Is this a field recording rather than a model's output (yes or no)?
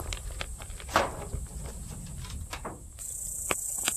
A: yes